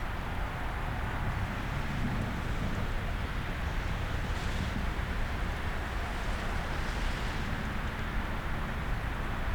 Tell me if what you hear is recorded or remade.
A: recorded